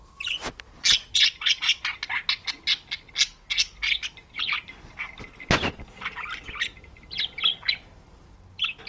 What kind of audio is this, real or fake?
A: real